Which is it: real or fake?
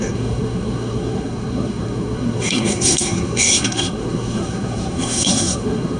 fake